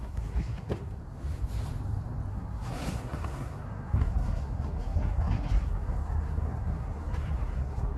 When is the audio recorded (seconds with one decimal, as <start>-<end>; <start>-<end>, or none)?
1.0-2.3